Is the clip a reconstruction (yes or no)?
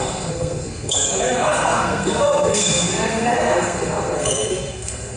yes